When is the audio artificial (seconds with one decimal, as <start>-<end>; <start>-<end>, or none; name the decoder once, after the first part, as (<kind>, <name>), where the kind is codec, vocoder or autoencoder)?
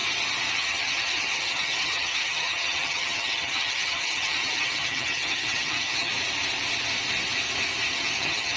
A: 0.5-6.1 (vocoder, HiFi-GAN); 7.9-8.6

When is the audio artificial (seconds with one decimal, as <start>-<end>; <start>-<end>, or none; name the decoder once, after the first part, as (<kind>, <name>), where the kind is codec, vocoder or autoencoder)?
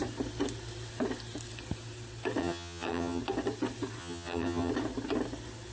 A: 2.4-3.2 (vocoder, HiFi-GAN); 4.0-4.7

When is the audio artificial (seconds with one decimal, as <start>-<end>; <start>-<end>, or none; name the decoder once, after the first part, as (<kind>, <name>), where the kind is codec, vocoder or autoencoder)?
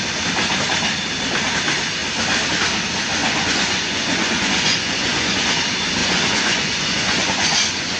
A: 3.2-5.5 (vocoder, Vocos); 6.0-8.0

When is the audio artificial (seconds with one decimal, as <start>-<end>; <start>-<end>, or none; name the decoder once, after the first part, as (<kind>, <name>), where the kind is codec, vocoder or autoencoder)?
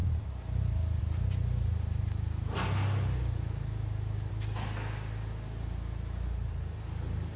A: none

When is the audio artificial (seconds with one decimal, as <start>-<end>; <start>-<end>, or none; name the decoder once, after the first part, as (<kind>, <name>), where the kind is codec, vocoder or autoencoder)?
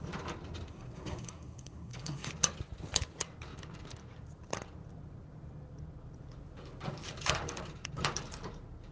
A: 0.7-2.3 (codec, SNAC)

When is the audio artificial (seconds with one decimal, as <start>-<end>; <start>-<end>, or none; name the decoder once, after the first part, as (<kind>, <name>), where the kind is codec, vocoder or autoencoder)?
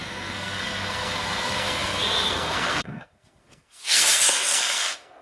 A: 0.0-5.2 (codec, SNAC)